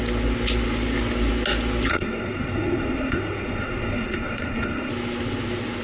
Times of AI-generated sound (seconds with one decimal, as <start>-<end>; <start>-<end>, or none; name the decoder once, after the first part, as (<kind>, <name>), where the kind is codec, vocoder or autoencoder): 1.9-4.9 (codec, SNAC)